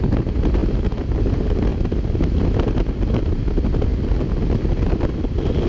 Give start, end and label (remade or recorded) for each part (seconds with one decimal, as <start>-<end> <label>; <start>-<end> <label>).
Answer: 0.0-5.7 recorded